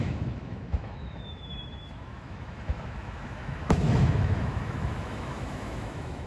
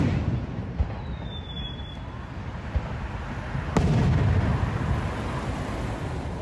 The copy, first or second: first